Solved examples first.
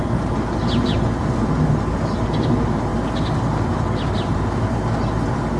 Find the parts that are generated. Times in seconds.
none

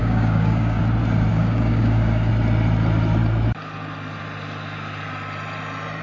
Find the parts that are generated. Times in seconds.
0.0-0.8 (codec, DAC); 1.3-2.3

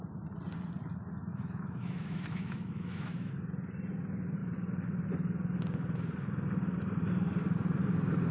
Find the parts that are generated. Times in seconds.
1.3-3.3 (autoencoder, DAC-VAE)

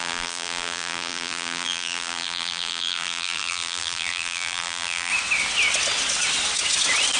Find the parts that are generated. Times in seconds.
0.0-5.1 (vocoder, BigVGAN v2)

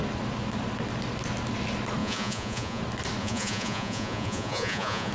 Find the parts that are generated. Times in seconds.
2.0-2.8 (vocoder, Vocos); 3.2-5.1